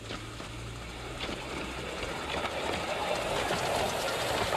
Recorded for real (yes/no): yes